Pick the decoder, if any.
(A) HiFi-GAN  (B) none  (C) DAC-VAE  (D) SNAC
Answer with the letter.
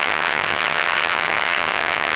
A